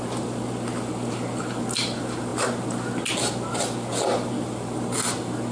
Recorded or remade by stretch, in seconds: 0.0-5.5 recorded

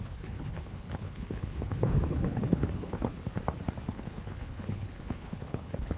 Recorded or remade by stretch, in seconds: 0.0-3.2 remade; 3.2-3.9 recorded; 3.9-6.0 remade

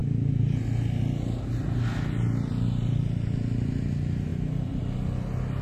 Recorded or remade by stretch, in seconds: 0.0-5.6 recorded

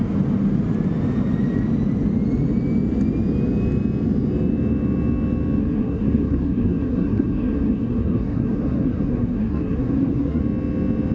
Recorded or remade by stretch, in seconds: 0.0-5.6 recorded; 5.6-10.4 remade; 10.4-11.1 recorded

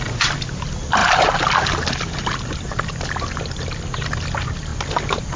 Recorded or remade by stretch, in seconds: 0.0-5.4 recorded